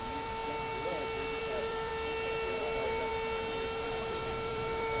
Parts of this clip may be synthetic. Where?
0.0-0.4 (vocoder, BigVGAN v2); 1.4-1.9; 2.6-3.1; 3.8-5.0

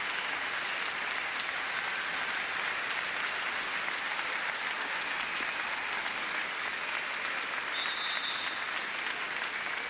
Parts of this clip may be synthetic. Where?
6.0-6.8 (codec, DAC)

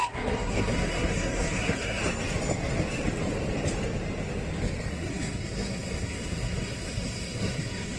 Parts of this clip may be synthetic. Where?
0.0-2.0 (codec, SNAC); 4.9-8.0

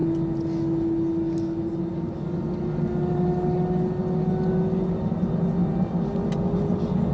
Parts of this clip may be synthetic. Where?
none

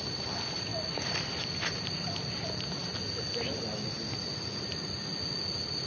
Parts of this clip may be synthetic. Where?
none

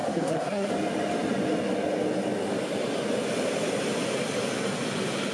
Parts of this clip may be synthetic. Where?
0.0-0.7 (codec, SNAC)